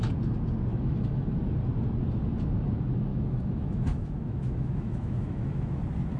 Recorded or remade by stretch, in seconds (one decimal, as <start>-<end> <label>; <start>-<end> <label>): 0.0-0.7 recorded; 0.7-1.4 remade; 1.4-3.1 recorded; 3.1-5.8 remade; 5.8-6.2 recorded